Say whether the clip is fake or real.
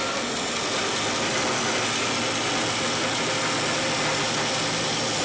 real